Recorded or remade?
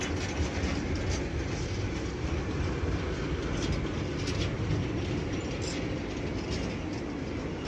recorded